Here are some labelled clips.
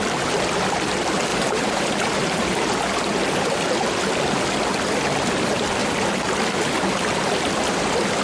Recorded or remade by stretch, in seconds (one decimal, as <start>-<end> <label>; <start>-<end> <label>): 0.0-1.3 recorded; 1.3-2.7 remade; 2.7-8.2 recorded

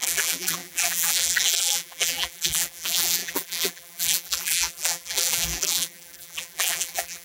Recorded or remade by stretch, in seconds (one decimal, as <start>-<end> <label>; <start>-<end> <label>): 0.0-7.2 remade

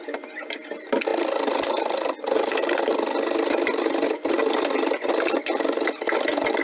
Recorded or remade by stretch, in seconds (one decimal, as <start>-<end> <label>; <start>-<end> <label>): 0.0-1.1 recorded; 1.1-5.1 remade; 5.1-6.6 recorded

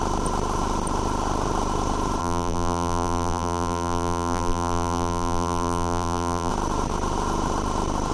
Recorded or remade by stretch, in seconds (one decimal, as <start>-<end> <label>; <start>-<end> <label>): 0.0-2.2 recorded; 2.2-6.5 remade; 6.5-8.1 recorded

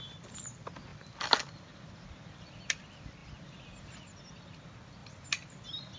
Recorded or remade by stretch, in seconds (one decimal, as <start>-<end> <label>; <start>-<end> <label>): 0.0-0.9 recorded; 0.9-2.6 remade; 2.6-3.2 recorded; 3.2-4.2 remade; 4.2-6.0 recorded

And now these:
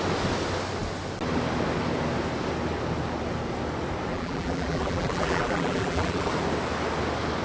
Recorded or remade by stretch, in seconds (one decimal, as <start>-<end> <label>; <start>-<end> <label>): 0.0-4.1 recorded; 4.1-6.3 remade; 6.3-7.4 recorded